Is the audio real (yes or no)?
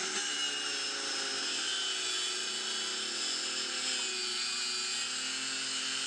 yes